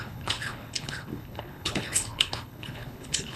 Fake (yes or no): yes